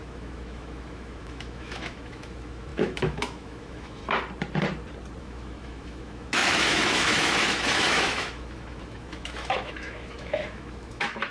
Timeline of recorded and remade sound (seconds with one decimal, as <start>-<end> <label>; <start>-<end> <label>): 0.0-4.0 remade; 4.0-5.2 recorded; 5.2-11.3 remade